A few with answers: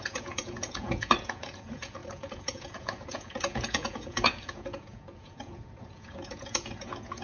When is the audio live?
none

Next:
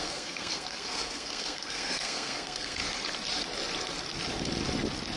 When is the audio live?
2.8-5.2

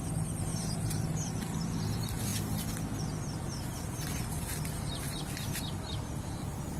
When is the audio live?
2.3-6.8

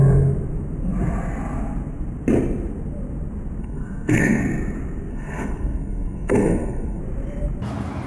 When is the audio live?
0.0-3.6; 4.4-5.1; 7.0-8.1

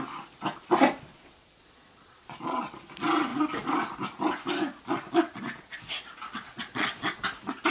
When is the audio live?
0.0-1.1; 2.7-6.5; 7.0-7.7

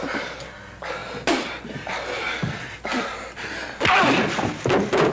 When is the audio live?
0.0-5.1

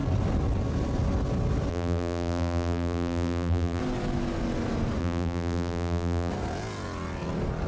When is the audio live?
0.0-1.7; 3.8-5.0; 6.3-7.7